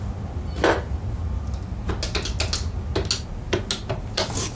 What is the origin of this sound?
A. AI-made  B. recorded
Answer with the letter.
B